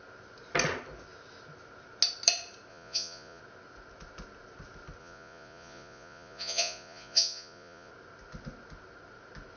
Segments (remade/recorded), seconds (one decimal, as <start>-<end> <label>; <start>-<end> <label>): 0.0-2.7 recorded; 2.7-3.4 remade; 3.4-5.0 recorded; 5.0-7.9 remade; 7.9-9.6 recorded